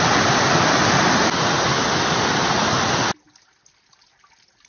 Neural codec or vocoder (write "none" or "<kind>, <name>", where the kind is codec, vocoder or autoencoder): none